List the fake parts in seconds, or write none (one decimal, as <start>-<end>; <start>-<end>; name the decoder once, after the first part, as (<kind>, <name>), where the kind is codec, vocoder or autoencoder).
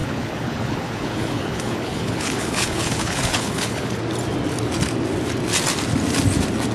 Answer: 0.0-4.0 (codec, HILCodec)